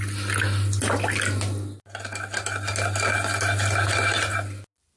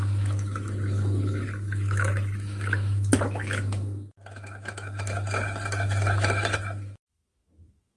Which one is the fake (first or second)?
second